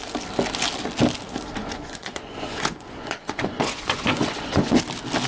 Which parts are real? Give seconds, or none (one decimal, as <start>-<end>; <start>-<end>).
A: 0.0-1.6; 4.8-5.3